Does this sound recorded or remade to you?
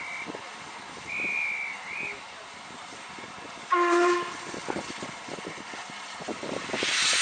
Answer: recorded